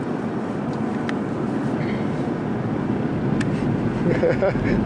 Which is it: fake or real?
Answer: real